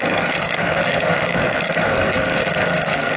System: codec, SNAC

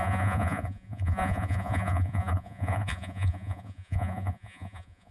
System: vocoder, Vocos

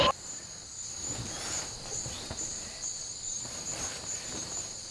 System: vocoder, BigVGAN v2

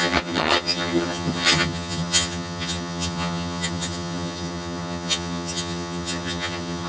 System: vocoder, HiFi-GAN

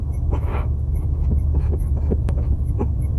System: autoencoder, DAC-VAE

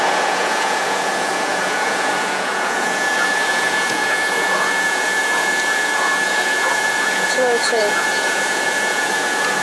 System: vocoder, Vocos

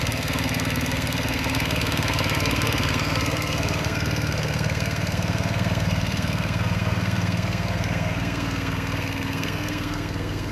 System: codec, SNAC